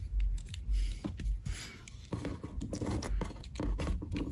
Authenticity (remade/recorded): recorded